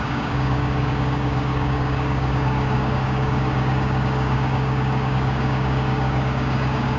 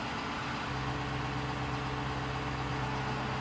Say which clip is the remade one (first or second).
first